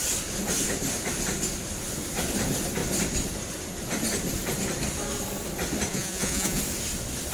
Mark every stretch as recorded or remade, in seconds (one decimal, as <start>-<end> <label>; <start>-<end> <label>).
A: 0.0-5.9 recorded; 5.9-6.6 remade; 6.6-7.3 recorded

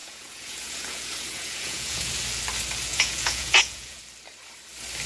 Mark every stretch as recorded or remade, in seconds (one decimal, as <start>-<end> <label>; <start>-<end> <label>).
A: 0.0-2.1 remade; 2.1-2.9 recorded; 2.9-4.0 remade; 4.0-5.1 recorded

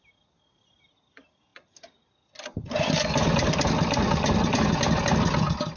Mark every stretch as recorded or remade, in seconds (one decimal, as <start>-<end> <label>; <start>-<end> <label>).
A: 0.0-5.8 recorded